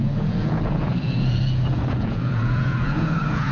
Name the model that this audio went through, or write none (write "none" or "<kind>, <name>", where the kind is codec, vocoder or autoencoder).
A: vocoder, Vocos